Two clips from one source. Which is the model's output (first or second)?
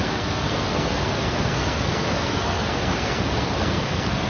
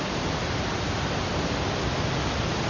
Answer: first